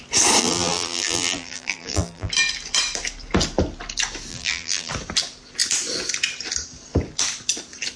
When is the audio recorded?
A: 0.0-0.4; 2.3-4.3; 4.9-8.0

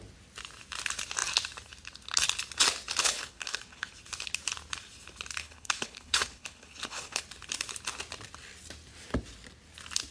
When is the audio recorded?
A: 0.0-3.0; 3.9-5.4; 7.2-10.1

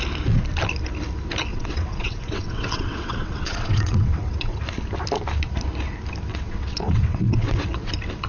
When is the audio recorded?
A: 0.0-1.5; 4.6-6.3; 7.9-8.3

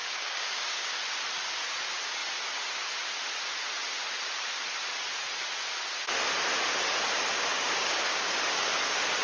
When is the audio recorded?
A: 1.0-7.5; 8.7-9.2

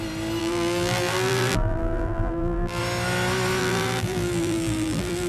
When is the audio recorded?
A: 0.0-0.4; 2.8-3.6

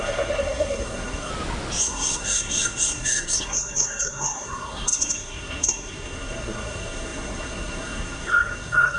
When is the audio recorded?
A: 1.3-1.8

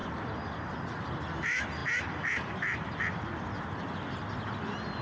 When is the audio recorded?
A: 0.0-5.0